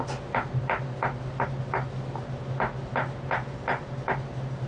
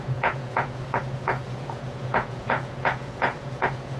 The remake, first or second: second